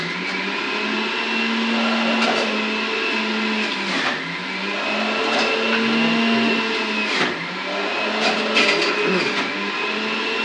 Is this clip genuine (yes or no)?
yes